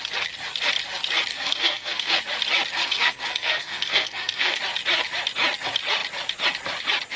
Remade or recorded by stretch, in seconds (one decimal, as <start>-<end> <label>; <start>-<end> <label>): 0.0-1.3 recorded; 1.3-2.2 remade; 2.2-2.8 recorded; 2.8-4.6 remade; 4.6-7.2 recorded